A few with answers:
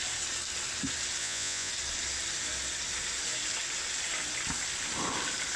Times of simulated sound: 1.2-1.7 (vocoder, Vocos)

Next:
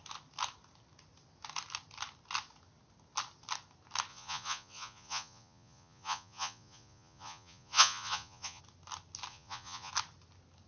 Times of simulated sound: 4.1-8.6 (vocoder, Vocos); 9.3-9.9

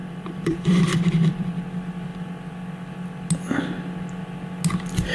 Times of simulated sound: 0.0-1.6 (vocoder, BigVGAN v2)

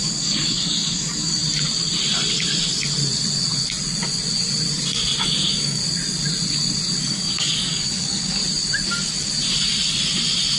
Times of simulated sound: 0.0-1.4 (codec, DAC); 5.2-5.8; 7.0-8.4

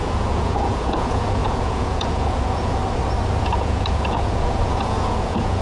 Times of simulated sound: 0.0-2.8 (vocoder, Vocos); 3.4-5.6

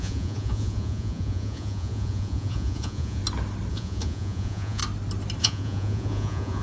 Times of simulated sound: 0.0-3.2 (vocoder, Vocos); 3.7-4.8; 5.4-6.6